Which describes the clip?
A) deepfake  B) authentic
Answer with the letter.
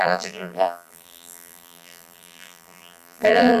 A